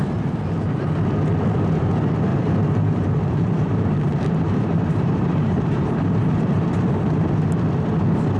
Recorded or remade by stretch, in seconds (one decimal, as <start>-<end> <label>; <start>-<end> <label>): 0.0-2.3 recorded; 2.3-7.3 remade; 7.3-8.4 recorded